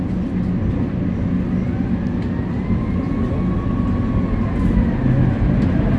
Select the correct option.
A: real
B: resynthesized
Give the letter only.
A